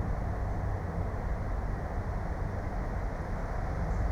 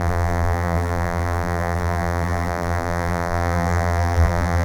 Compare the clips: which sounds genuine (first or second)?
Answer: first